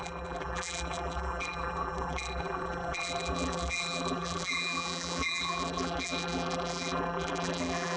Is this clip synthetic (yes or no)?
yes